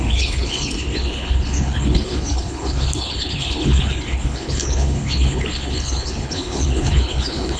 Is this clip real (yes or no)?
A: no